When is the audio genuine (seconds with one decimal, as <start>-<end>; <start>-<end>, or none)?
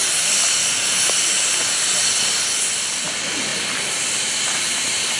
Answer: 0.0-5.2